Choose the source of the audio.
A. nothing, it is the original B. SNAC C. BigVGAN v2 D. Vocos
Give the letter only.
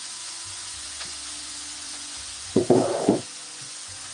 D